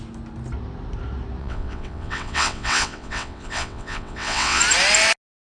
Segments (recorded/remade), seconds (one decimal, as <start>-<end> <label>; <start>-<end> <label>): 0.0-1.4 recorded; 1.4-4.6 remade; 4.6-5.4 recorded